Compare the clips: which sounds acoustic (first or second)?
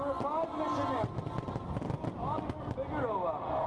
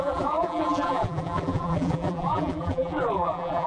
first